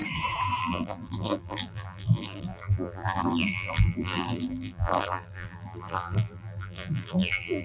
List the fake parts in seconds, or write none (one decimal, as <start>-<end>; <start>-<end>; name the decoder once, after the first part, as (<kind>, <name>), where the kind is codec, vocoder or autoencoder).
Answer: 0.6-7.6 (vocoder, BigVGAN v2)